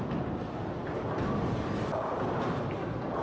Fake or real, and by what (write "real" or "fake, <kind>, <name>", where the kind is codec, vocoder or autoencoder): fake, vocoder, BigVGAN v2